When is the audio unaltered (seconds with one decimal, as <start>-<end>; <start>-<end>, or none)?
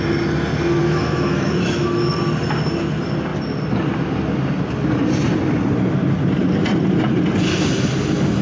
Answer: 0.0-0.8; 2.1-8.4